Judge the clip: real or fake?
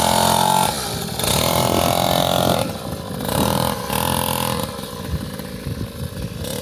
real